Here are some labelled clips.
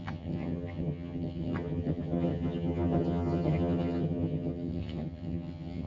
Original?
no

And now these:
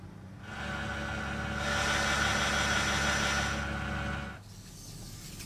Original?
yes